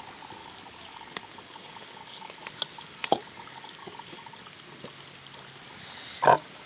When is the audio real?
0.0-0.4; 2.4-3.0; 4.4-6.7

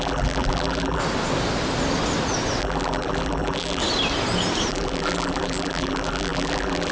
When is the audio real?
1.0-2.6; 3.8-4.7